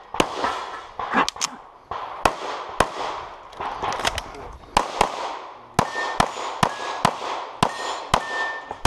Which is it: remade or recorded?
recorded